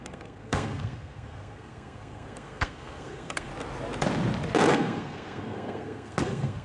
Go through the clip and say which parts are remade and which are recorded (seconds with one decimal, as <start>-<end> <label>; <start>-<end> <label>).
0.0-3.5 remade; 3.5-4.7 recorded; 4.7-6.6 remade